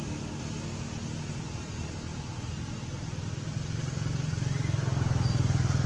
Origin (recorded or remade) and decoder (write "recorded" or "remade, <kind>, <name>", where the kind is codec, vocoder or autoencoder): recorded